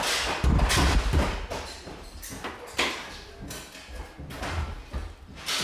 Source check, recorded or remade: recorded